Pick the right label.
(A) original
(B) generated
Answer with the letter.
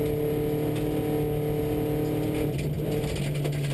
A